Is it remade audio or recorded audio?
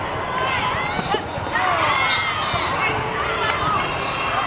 recorded